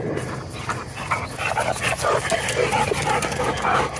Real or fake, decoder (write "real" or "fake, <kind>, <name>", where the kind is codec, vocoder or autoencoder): real